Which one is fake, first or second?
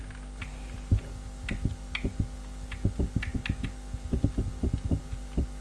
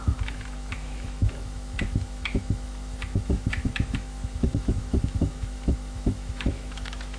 second